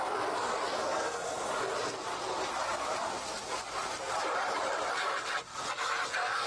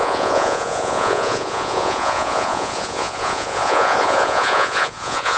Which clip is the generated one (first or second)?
second